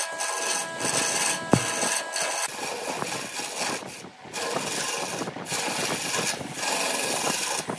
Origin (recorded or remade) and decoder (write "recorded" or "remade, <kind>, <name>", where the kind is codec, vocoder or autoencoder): recorded